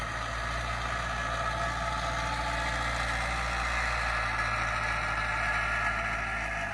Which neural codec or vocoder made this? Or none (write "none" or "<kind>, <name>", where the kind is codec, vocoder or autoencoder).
none